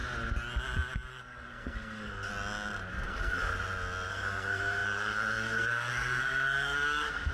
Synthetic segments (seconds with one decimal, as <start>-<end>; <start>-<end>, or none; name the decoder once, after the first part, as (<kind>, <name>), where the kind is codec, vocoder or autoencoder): 1.1-2.3 (codec, SNAC); 2.9-3.5; 4.1-7.3